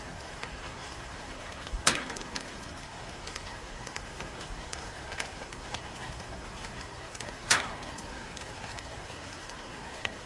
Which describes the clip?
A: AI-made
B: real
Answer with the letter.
A